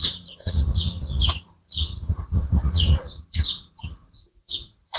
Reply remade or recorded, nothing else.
remade